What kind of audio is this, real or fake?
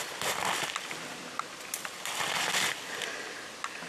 real